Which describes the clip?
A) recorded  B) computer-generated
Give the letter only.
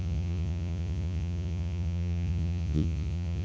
B